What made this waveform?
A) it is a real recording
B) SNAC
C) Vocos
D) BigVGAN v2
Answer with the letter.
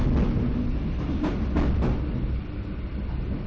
A